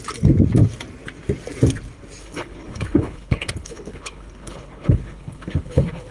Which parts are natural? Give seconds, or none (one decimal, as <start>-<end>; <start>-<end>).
0.0-2.2